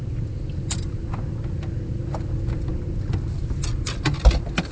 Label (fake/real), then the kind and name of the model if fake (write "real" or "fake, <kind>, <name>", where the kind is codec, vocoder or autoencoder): real